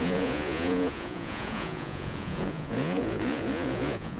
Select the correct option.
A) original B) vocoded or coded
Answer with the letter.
B